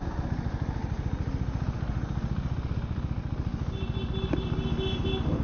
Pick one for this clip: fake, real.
real